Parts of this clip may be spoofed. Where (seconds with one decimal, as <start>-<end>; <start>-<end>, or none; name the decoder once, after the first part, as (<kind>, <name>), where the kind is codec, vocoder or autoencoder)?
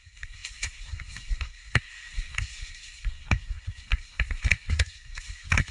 0.0-5.7 (codec, SNAC)